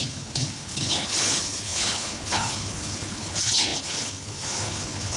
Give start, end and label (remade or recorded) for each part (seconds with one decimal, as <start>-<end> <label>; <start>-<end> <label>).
0.0-5.2 remade